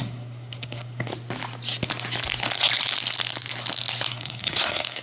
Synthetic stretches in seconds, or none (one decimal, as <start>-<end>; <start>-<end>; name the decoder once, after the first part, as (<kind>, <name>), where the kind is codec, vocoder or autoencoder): 0.0-1.1 (codec, SNAC); 4.1-5.0